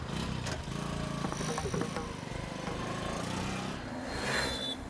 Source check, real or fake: real